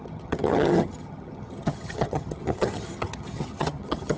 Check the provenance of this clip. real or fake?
fake